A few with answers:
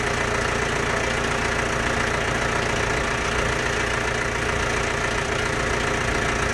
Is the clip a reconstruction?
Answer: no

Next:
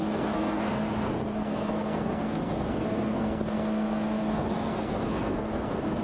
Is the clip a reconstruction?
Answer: yes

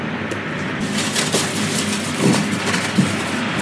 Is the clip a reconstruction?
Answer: no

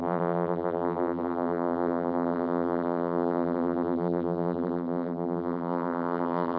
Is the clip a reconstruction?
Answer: yes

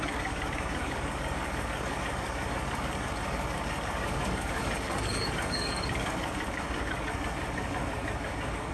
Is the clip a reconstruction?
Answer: yes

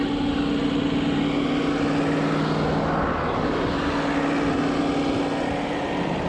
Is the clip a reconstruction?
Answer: no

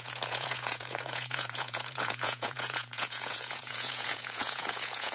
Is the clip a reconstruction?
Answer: yes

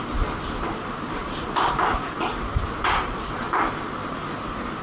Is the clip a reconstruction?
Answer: yes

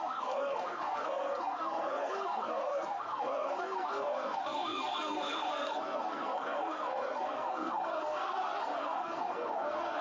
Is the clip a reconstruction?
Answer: yes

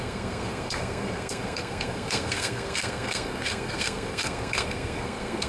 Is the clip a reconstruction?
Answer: yes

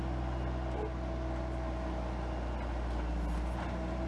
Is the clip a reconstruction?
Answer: no